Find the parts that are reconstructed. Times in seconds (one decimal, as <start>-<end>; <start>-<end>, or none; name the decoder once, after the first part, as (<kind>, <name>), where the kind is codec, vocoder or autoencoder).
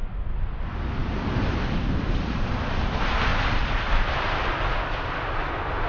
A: none